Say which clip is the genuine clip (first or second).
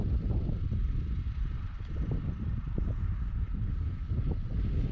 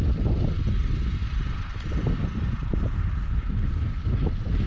second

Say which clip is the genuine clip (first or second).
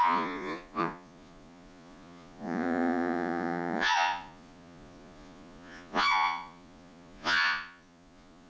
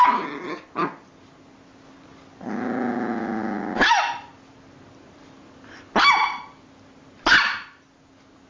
second